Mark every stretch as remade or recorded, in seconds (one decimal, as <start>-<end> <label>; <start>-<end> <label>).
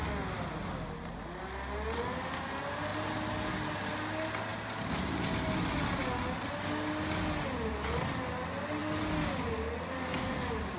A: 0.0-10.8 recorded